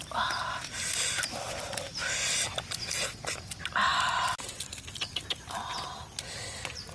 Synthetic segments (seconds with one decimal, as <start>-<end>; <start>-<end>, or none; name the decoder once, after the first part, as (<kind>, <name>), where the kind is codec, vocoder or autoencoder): none